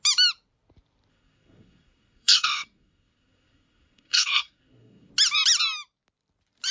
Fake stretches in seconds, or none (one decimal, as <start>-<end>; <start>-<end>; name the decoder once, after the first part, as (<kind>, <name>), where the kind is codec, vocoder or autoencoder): 1.1-5.1 (codec, SNAC)